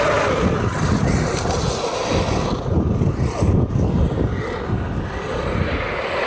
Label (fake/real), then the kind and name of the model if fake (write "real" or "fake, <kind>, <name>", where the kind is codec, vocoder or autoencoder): real